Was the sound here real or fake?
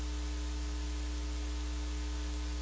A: real